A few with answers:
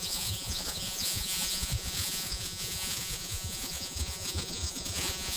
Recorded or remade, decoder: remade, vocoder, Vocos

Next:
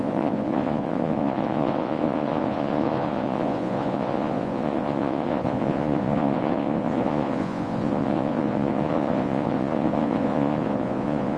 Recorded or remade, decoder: remade, vocoder, Vocos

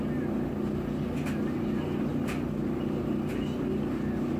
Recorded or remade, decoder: recorded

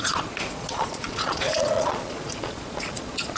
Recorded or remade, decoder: remade, vocoder, Vocos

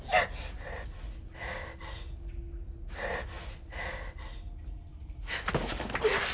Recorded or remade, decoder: recorded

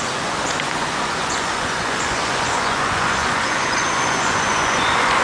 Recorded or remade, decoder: remade, vocoder, Vocos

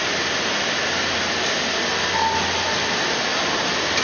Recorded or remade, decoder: recorded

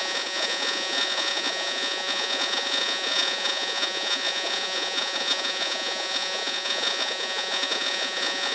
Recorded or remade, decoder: remade, vocoder, Vocos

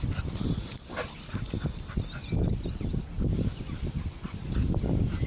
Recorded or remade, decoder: recorded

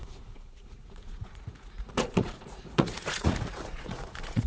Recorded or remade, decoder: remade, vocoder, Vocos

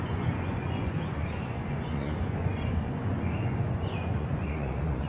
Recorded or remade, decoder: remade, vocoder, Vocos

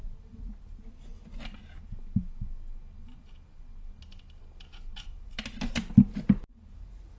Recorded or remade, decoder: recorded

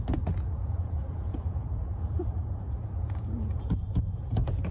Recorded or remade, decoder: remade, vocoder, Vocos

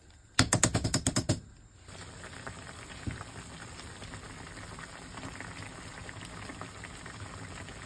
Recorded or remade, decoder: recorded